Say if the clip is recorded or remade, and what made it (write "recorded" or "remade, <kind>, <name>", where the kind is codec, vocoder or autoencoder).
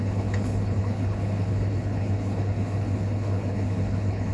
remade, codec, HILCodec